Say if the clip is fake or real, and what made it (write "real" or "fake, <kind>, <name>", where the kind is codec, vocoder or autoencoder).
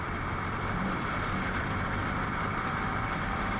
fake, vocoder, BigVGAN v2